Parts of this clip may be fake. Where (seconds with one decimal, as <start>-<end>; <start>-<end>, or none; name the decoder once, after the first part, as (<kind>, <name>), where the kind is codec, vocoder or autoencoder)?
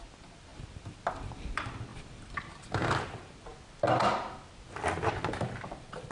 1.9-2.6 (vocoder, BigVGAN v2)